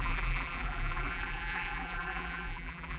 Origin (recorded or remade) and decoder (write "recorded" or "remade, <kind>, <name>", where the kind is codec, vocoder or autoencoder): remade, vocoder, BigVGAN v2